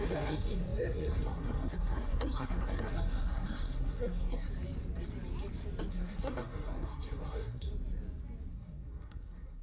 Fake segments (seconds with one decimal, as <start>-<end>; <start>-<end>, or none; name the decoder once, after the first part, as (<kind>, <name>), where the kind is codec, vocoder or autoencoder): 0.0-4.5 (codec, SNAC); 5.9-7.7; 8.5-9.6